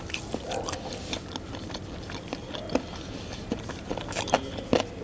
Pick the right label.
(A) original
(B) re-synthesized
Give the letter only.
A